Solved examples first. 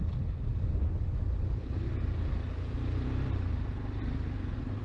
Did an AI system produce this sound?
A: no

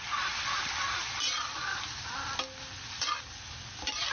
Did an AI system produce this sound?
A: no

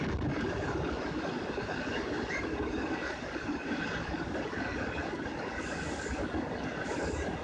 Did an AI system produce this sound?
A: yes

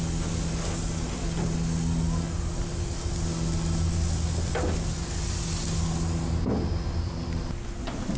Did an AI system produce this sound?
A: no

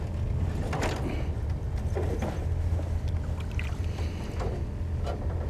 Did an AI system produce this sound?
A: no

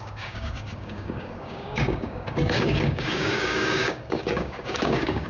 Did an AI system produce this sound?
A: yes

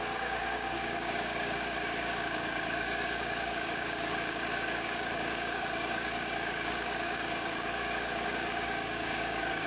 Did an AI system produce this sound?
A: yes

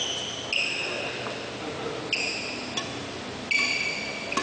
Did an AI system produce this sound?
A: no